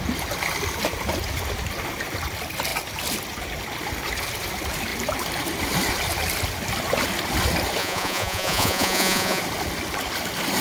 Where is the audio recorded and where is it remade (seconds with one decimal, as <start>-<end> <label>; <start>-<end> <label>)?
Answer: 0.0-7.8 recorded; 7.8-9.4 remade; 9.4-10.6 recorded